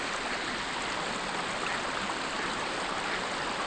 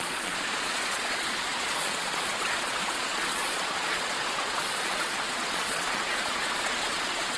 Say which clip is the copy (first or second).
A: second